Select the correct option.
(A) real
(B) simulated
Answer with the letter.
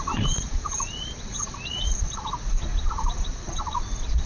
B